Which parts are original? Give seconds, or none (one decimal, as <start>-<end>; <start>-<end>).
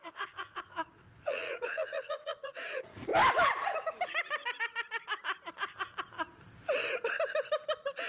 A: 3.1-8.1